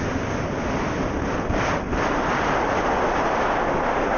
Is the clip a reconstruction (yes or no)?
no